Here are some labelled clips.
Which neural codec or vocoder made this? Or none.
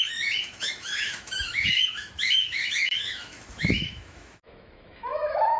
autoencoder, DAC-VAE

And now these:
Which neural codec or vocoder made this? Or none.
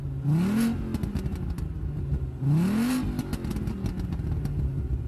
none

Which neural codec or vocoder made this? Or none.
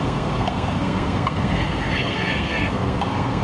codec, SNAC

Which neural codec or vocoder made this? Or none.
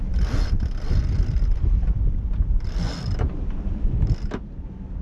none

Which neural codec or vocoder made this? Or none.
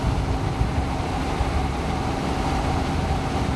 none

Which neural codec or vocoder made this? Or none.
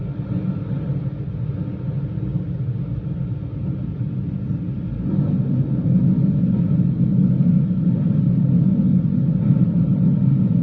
none